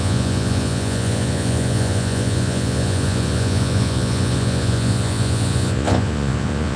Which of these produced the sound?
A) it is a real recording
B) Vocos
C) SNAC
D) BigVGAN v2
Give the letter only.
B